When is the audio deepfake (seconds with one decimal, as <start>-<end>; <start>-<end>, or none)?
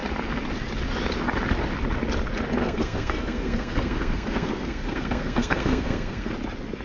2.6-6.3